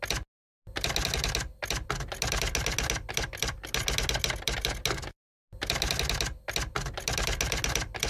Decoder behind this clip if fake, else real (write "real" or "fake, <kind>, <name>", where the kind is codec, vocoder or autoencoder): real